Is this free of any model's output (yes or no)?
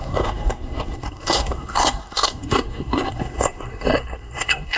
no